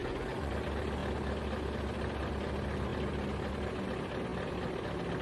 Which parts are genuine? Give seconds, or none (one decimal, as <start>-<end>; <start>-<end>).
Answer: 0.5-5.2

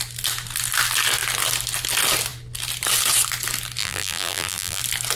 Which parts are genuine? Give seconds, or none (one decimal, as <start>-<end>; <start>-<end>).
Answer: 0.0-3.8; 4.8-5.2

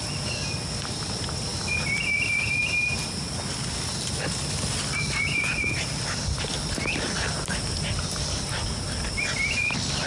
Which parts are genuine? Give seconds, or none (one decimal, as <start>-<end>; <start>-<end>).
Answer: 0.0-10.1

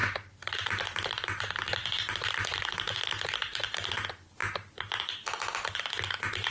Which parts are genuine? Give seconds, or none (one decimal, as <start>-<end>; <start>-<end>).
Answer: 3.9-6.5

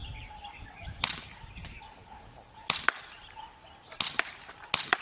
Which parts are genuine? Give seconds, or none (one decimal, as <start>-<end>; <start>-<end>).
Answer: 0.0-5.0